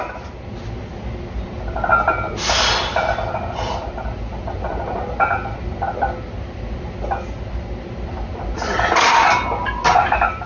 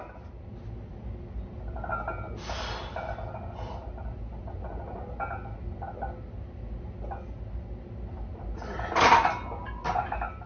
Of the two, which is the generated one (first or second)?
first